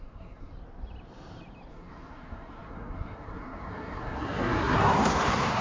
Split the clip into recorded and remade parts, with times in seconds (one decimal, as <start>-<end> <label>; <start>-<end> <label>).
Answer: 0.0-0.5 remade; 0.5-1.7 recorded; 1.7-5.6 remade